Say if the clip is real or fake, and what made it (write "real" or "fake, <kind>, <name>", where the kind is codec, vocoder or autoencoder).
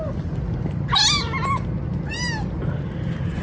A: real